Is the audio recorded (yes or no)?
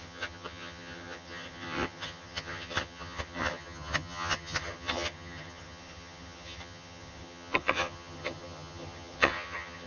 no